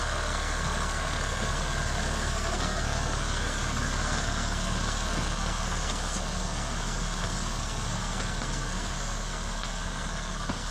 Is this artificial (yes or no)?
yes